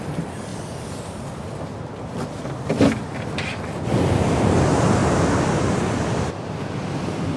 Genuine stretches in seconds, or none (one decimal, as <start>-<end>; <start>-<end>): 0.0-0.5; 4.4-7.4

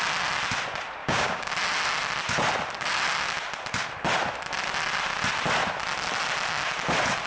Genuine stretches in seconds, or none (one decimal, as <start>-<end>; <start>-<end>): 0.0-1.0; 1.5-7.3

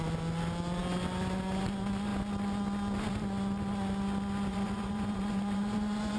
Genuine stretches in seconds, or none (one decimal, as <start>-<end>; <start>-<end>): 0.0-4.5

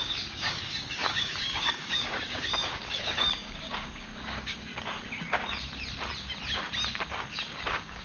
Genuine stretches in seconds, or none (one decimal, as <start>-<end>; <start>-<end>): 4.7-7.3

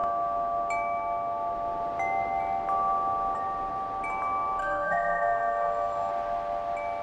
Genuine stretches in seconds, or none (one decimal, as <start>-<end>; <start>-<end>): 0.0-4.6; 6.1-7.0

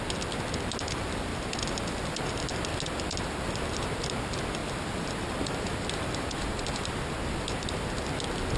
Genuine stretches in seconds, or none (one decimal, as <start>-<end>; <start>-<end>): 0.0-2.7; 4.1-4.6; 8.2-8.6

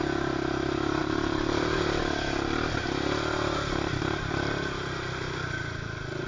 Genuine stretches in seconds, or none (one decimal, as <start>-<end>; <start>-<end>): 0.0-1.0; 2.0-6.3